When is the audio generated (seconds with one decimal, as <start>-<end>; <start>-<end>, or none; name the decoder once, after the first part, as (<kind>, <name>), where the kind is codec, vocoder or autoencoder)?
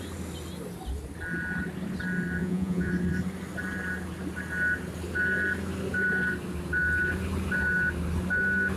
2.4-2.9 (vocoder, Vocos)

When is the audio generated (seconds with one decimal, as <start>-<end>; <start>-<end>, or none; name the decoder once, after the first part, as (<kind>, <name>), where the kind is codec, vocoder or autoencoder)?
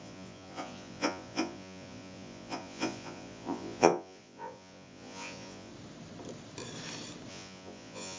0.0-5.7 (vocoder, Vocos); 7.3-8.2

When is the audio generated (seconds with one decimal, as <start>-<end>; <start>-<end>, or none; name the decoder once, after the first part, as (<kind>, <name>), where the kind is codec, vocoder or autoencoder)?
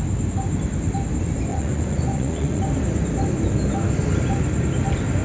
1.5-2.6 (vocoder, Vocos)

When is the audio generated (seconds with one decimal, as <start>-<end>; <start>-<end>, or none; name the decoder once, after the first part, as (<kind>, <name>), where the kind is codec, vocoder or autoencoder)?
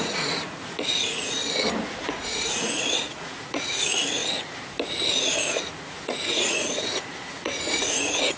0.0-1.4 (vocoder, Vocos); 2.0-4.2; 5.2-8.4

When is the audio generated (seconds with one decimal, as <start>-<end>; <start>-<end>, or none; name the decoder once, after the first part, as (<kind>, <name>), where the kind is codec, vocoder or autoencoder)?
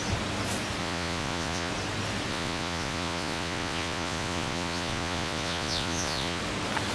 0.8-1.7 (vocoder, Vocos); 2.3-6.4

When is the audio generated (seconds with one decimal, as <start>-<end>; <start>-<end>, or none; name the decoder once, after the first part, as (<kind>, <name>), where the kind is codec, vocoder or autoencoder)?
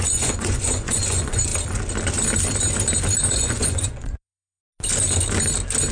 0.0-1.5 (vocoder, Vocos); 3.3-4.6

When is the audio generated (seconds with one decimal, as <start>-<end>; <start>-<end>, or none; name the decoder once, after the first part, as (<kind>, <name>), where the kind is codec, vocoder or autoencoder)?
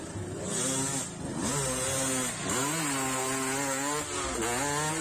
none